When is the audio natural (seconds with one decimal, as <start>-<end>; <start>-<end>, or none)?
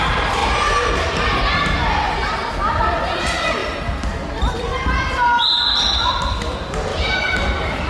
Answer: 0.0-0.4; 2.5-6.9